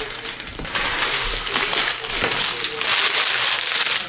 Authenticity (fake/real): real